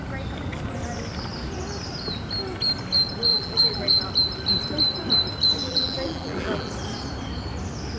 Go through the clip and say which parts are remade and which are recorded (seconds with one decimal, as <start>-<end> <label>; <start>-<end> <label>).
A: 0.0-3.3 recorded; 3.3-4.0 remade; 4.0-5.6 recorded; 5.6-6.7 remade; 6.7-8.0 recorded